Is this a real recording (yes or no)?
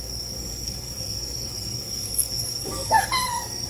no